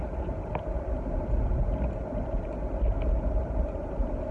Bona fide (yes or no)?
yes